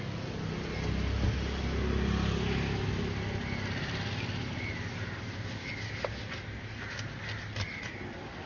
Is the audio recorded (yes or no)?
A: yes